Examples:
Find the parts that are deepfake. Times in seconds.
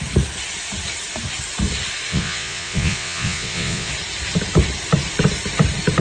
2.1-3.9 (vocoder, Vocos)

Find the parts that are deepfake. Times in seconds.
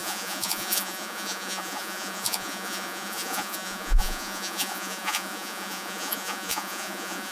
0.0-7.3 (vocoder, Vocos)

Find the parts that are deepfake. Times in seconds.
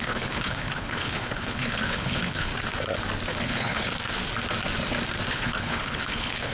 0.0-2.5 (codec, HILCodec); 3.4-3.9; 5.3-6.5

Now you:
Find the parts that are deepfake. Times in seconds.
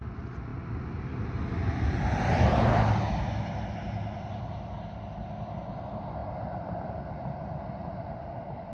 none